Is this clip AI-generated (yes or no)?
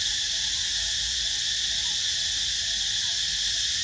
no